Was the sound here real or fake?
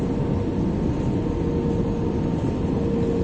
real